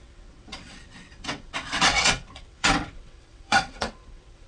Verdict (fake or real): fake